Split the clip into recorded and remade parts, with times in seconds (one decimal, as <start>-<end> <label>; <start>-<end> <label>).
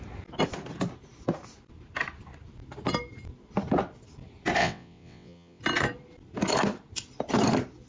0.0-4.6 recorded; 4.6-5.6 remade; 5.6-7.9 recorded